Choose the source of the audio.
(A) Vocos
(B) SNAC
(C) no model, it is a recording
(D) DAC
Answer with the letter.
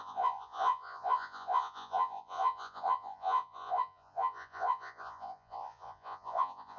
A